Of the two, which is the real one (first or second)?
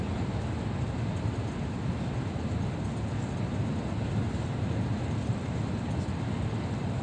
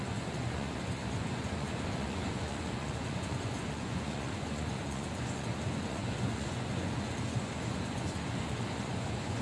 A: first